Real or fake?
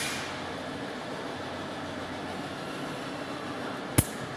real